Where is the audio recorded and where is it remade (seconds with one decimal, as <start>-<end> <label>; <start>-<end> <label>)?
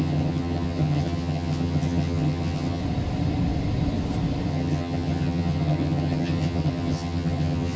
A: 0.0-2.8 remade; 2.8-4.5 recorded; 4.5-7.8 remade